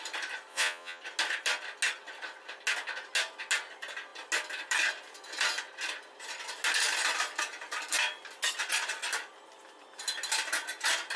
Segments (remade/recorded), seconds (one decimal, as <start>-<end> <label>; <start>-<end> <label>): 0.0-0.5 recorded; 0.5-1.0 remade; 1.0-11.2 recorded